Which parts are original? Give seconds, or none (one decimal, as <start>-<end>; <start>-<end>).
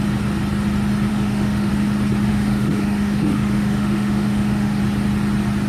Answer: 0.0-1.1; 1.7-2.3; 4.8-5.7